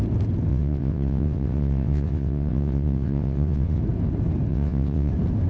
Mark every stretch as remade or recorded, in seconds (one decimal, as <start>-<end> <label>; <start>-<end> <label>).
0.0-0.5 recorded; 0.5-3.8 remade; 3.8-4.5 recorded; 4.5-5.1 remade; 5.1-5.5 recorded